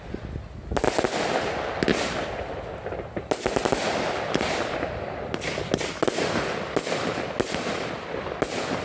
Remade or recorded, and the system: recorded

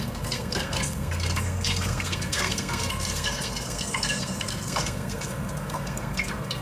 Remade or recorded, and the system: remade, codec, SNAC